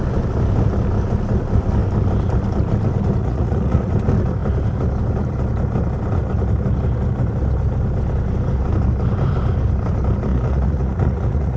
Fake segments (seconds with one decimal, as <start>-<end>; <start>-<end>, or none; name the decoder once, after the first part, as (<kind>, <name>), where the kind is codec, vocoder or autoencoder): 3.2-3.9 (vocoder, Vocos); 10.3-11.6